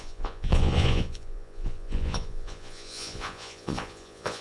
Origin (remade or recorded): remade